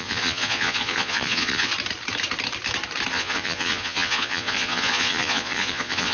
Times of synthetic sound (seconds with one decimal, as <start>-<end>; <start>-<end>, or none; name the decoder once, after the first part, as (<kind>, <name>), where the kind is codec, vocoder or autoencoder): 0.0-1.7 (vocoder, Vocos); 3.1-6.1